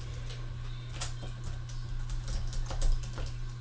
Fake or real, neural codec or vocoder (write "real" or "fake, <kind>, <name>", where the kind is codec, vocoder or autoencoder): real